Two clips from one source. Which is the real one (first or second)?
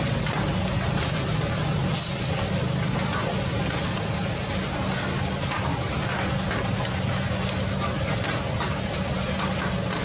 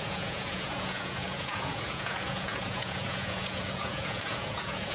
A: first